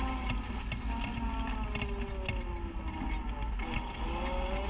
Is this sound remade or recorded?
recorded